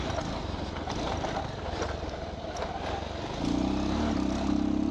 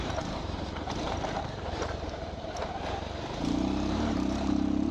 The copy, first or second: second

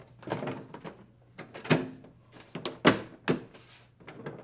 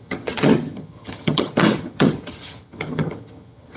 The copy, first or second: second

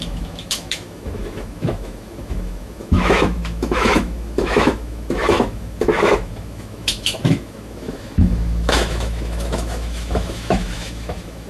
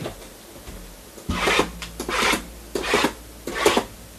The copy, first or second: first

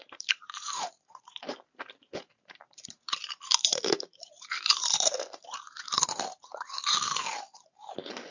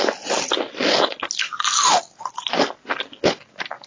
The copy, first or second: first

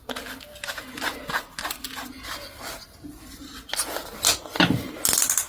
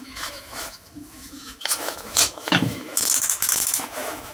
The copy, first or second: second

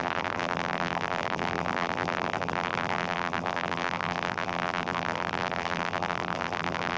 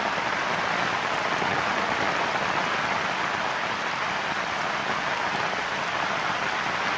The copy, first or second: first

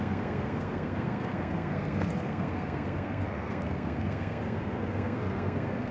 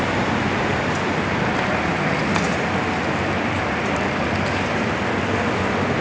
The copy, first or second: first